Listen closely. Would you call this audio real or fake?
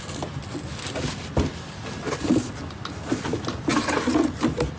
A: real